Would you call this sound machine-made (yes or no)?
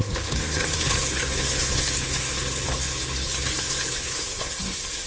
yes